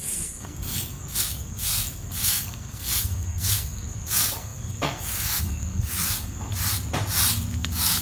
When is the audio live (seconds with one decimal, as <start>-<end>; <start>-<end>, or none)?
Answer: 6.5-7.5